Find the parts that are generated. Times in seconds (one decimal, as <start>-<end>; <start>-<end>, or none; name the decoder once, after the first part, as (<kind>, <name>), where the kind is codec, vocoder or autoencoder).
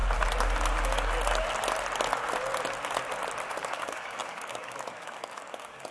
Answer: 3.5-5.9 (codec, DAC)